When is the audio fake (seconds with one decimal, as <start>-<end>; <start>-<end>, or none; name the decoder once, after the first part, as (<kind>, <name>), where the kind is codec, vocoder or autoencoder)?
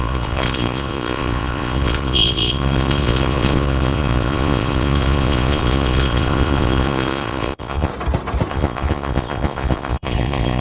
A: 0.0-7.9 (vocoder, Vocos); 8.5-10.6